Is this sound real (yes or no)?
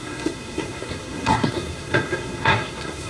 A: no